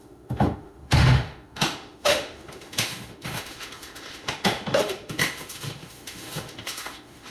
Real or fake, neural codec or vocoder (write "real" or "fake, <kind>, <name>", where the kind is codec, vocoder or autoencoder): fake, autoencoder, DAC-VAE